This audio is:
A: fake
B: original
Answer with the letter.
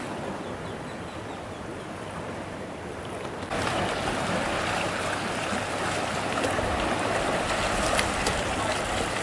A